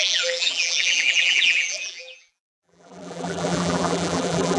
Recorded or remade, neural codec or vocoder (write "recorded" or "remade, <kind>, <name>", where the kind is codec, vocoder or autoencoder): remade, vocoder, BigVGAN v2